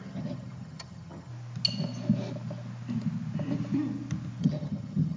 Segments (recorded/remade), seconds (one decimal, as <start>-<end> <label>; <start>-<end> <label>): 0.0-1.3 remade; 1.3-4.4 recorded; 4.4-5.2 remade

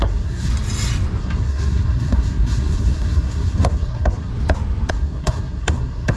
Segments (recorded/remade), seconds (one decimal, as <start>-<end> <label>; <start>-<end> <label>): 0.0-0.5 remade; 0.5-1.2 recorded; 1.2-4.3 remade; 4.3-4.9 recorded; 4.9-6.2 remade

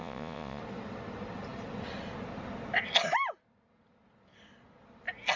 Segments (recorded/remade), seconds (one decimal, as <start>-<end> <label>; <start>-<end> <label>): 0.0-0.6 remade; 0.6-5.4 recorded

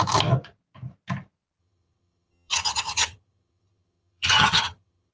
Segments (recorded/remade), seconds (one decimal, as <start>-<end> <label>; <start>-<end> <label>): 0.0-1.6 recorded; 1.6-5.1 remade

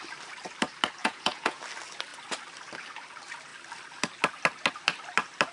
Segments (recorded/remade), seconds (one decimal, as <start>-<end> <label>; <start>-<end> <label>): 0.0-1.0 recorded; 1.0-1.6 remade; 1.6-5.5 recorded